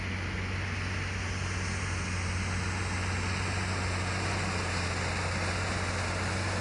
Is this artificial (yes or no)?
no